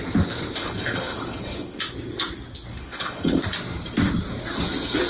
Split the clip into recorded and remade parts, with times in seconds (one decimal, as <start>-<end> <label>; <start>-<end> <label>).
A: 0.0-0.6 recorded; 0.6-1.8 remade; 1.8-2.7 recorded; 2.7-3.4 remade; 3.4-5.1 recorded